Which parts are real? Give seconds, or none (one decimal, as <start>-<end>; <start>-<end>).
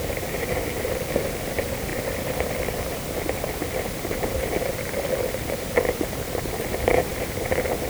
none